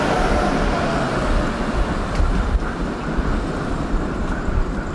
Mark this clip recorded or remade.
recorded